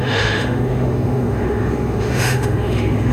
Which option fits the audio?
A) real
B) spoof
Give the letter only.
B